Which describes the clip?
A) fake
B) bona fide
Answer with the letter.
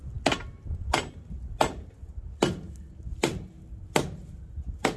B